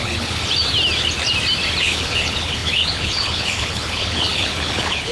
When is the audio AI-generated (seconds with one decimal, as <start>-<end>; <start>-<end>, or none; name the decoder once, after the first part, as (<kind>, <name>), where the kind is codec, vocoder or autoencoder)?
0.0-0.4 (codec, HILCodec); 1.8-5.1